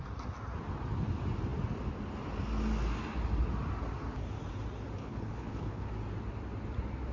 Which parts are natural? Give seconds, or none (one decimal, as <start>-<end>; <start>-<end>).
0.0-5.0; 5.9-7.1